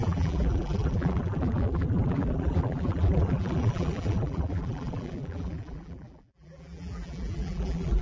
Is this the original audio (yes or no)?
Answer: no